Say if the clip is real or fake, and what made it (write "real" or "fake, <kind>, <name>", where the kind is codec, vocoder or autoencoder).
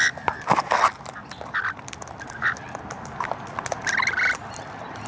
real